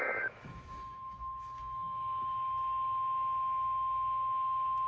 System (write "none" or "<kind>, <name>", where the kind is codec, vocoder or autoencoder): autoencoder, DAC-VAE